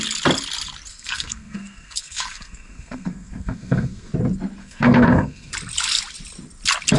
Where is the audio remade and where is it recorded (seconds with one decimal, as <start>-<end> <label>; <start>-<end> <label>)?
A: 0.0-0.9 recorded; 0.9-4.1 remade; 4.1-4.6 recorded; 4.6-5.5 remade; 5.5-7.0 recorded